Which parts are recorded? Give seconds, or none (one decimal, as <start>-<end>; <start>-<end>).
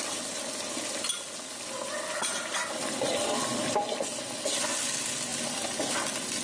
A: 0.0-6.4